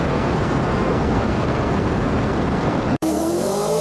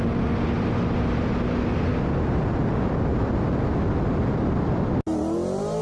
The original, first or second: second